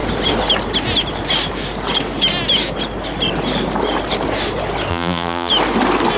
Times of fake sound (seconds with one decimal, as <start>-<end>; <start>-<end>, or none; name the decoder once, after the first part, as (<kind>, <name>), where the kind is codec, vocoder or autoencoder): 4.9-5.5 (vocoder, BigVGAN v2)